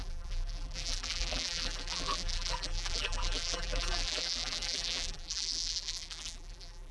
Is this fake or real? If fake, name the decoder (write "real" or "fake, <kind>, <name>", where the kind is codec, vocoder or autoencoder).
fake, vocoder, BigVGAN v2